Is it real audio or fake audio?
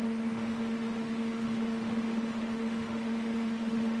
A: fake